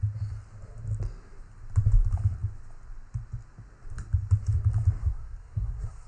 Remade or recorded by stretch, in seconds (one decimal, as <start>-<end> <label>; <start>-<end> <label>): 0.0-5.0 recorded; 5.0-6.1 remade